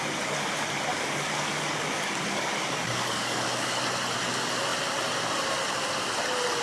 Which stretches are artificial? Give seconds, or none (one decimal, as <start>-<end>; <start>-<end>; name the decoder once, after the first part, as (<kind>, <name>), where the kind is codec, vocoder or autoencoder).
0.9-3.8 (codec, DAC)